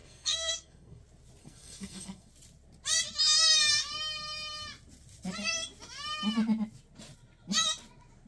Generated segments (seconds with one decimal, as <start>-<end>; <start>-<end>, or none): 0.0-1.0; 1.4-2.3